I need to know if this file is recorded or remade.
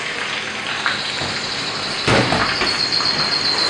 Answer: recorded